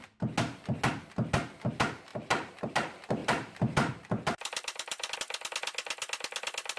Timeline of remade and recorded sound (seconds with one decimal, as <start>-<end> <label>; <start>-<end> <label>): 0.0-3.2 recorded; 3.2-5.1 remade; 5.1-6.8 recorded